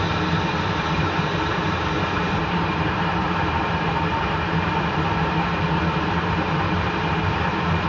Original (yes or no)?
no